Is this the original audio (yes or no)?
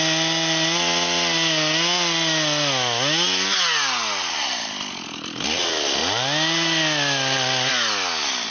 yes